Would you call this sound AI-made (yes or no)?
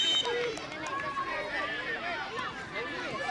no